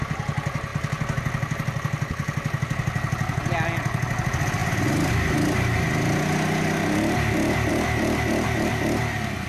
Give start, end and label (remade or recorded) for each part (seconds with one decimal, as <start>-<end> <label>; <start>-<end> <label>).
0.0-9.5 recorded